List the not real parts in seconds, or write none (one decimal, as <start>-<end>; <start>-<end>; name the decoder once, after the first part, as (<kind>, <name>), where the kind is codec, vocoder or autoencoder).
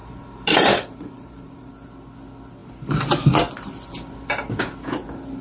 0.0-1.7 (vocoder, BigVGAN v2)